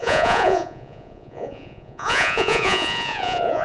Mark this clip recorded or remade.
remade